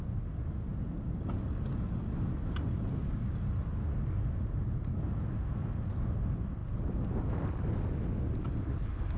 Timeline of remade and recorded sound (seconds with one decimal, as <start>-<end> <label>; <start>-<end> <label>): 0.0-9.2 recorded